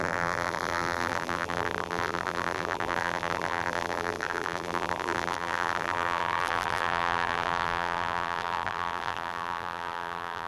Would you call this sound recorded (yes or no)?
no